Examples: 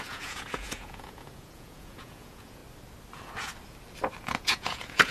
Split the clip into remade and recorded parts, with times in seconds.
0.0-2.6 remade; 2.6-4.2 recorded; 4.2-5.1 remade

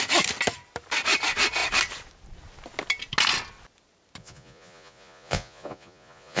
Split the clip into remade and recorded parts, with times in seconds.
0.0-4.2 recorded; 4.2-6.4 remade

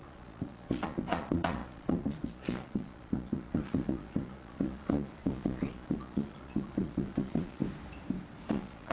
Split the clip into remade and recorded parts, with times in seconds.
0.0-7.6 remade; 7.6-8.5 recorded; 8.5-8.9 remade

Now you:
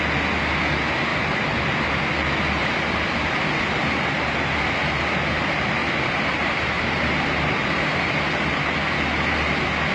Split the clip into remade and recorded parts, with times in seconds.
0.0-1.1 recorded; 1.1-1.8 remade; 1.8-2.6 recorded; 2.6-3.9 remade; 3.9-5.8 recorded; 5.8-8.1 remade; 8.1-9.9 recorded

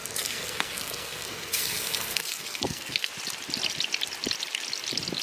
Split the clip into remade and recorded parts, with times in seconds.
0.0-3.1 remade; 3.1-5.2 recorded

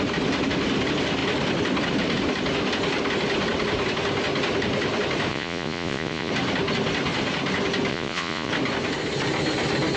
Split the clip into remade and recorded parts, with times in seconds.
0.0-5.3 recorded; 5.3-6.3 remade; 6.3-7.9 recorded; 7.9-8.5 remade; 8.5-10.0 recorded

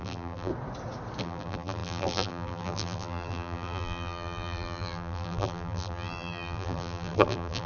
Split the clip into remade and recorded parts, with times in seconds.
0.0-0.5 remade; 0.5-1.2 recorded; 1.2-7.7 remade